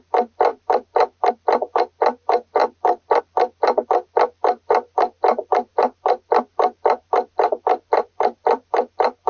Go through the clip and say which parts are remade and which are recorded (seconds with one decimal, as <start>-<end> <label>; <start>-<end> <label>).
0.0-0.5 recorded; 0.5-1.3 remade; 1.3-5.3 recorded; 5.3-9.3 remade